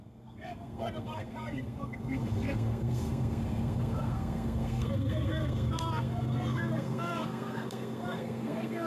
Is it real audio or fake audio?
fake